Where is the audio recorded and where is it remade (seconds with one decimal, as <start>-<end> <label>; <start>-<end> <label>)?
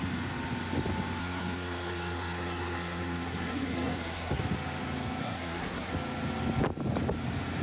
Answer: 0.0-1.2 recorded; 1.2-4.4 remade; 4.4-5.2 recorded; 5.2-5.9 remade; 5.9-7.6 recorded